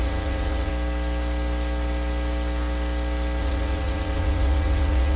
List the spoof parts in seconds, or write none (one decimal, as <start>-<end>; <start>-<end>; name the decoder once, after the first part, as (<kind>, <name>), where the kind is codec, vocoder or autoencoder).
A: 0.0-0.7 (vocoder, WaveNeXt); 3.4-5.2